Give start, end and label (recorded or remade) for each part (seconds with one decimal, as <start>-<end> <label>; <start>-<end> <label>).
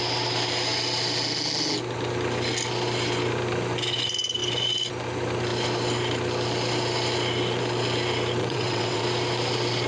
0.0-8.4 recorded; 8.4-9.0 remade; 9.0-9.9 recorded